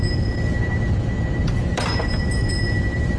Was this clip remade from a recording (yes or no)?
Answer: yes